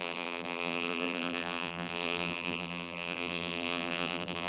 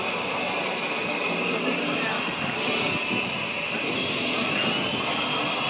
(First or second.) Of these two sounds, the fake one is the first